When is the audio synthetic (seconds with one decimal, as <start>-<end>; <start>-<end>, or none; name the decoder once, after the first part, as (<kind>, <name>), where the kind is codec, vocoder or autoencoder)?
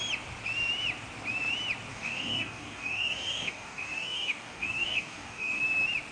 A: 1.9-5.6 (codec, DAC)